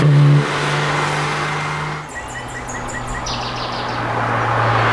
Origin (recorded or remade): recorded